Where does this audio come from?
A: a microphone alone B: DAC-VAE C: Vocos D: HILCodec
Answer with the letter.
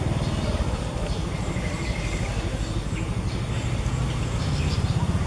A